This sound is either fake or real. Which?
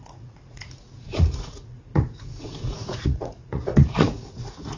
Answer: fake